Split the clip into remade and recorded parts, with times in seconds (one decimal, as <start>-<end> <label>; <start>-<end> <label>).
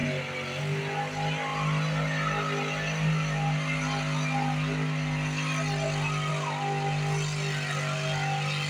0.0-8.7 recorded